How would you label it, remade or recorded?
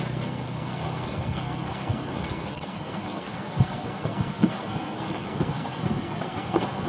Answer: remade